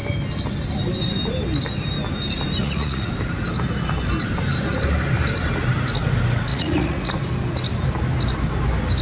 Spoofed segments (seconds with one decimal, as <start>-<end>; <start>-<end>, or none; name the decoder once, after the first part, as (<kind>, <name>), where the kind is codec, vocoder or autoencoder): 2.6-3.1 (vocoder, Vocos); 6.5-7.1